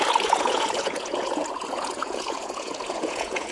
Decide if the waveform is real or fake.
fake